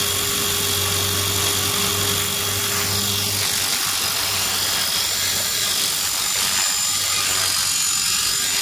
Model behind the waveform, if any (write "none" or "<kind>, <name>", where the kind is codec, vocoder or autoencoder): none